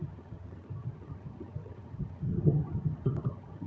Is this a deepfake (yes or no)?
yes